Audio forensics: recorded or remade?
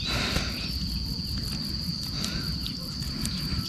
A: recorded